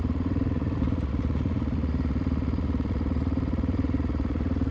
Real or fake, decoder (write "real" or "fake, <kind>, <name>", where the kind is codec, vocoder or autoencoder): fake, vocoder, Vocos